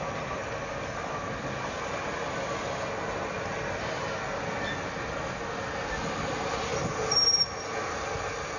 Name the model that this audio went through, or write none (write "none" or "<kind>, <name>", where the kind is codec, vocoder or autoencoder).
none